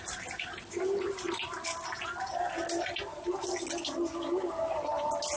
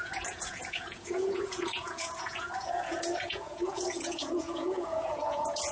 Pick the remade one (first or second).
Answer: second